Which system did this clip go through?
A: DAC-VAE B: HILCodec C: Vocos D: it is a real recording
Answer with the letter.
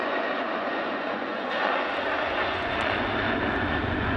C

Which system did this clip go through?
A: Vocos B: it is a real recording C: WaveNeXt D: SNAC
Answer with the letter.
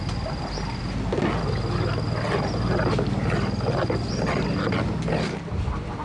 B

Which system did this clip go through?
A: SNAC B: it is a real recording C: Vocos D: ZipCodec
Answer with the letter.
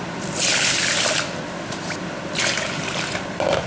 B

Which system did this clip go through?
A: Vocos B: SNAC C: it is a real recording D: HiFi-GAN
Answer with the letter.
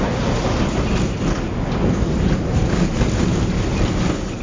C